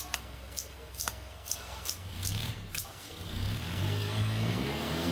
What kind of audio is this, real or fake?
fake